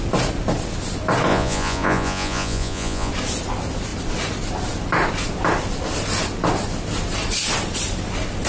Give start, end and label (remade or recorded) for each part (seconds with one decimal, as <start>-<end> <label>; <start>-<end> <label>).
0.0-1.3 recorded; 1.3-3.1 remade; 3.1-8.5 recorded